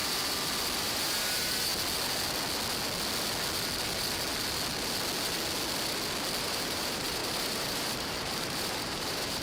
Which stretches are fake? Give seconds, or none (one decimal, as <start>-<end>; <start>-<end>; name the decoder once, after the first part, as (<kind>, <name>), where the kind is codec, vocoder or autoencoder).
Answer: 0.8-1.7 (vocoder, BigVGAN v2); 6.4-9.4